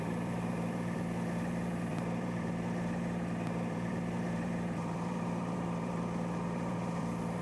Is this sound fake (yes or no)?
yes